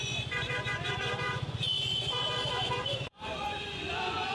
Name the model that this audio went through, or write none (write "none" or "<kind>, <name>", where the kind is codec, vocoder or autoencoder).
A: vocoder, Vocos